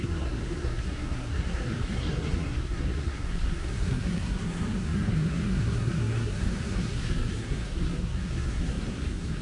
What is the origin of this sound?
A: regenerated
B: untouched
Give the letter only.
A